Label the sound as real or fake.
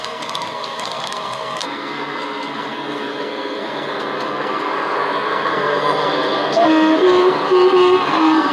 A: fake